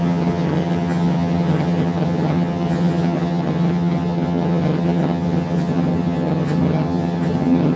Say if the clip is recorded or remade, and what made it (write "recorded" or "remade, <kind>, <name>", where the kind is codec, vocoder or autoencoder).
remade, vocoder, HiFi-GAN